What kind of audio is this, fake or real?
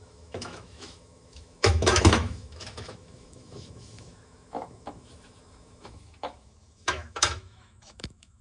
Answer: fake